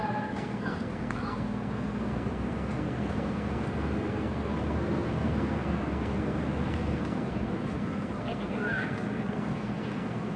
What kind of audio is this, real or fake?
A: fake